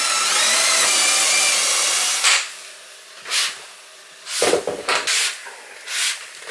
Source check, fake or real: real